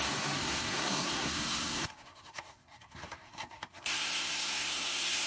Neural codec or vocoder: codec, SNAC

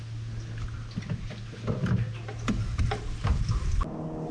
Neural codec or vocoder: none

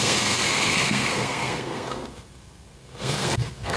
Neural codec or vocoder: codec, SNAC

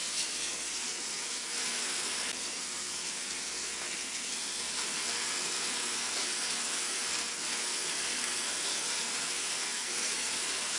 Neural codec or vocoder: codec, SNAC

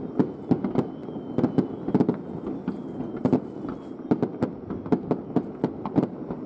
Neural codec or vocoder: none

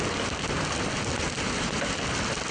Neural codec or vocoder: none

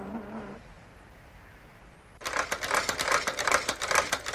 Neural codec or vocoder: none